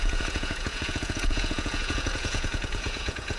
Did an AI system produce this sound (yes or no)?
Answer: yes